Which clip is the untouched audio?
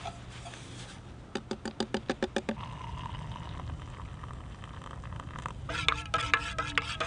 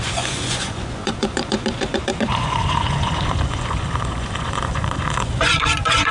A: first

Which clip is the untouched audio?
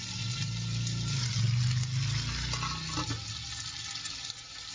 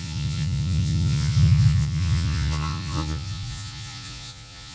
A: first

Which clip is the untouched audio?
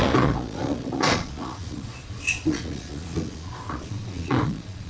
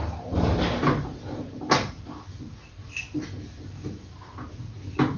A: second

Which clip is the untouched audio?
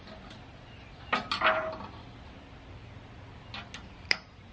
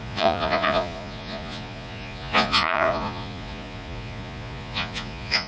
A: first